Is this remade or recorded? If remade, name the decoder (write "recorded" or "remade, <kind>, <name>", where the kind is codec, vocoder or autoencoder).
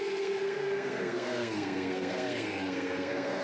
remade, codec, SNAC